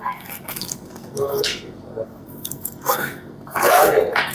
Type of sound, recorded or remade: remade